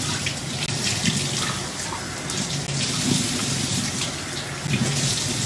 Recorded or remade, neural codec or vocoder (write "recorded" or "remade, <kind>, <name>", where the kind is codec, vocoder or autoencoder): recorded